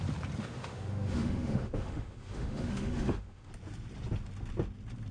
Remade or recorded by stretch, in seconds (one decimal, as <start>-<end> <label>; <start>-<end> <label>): 0.0-0.4 recorded; 0.4-3.5 remade; 3.5-5.1 recorded